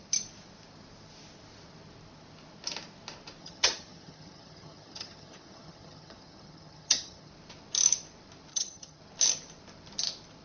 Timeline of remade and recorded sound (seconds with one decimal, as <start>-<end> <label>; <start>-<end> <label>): 0.0-3.4 recorded; 3.4-7.3 remade; 7.3-8.5 recorded; 8.5-9.0 remade; 9.0-10.4 recorded